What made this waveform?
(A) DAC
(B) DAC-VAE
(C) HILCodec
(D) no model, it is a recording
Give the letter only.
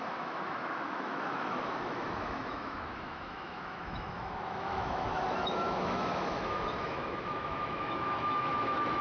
B